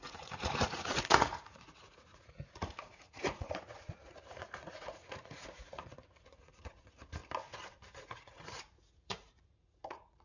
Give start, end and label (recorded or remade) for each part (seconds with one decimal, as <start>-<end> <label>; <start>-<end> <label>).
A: 0.0-7.2 remade; 7.2-8.0 recorded; 8.0-10.2 remade